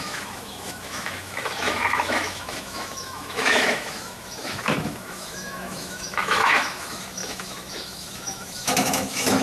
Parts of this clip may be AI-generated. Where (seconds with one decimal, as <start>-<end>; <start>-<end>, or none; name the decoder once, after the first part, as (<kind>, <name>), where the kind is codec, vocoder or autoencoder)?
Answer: 0.0-9.4 (autoencoder, DAC-VAE)